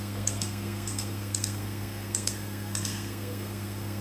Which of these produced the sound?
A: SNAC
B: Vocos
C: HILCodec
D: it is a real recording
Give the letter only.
A